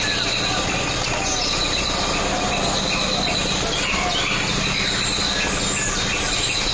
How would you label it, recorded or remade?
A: recorded